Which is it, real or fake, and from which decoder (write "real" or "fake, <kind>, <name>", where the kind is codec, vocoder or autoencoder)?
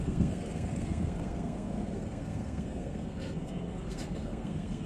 fake, codec, SNAC